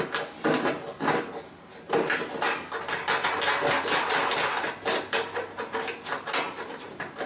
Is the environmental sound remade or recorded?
recorded